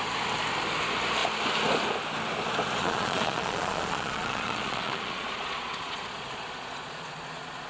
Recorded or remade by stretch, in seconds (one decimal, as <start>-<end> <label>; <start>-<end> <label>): 0.0-2.8 recorded; 2.8-7.7 remade